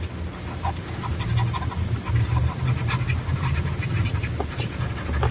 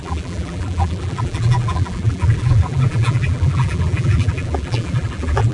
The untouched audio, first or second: first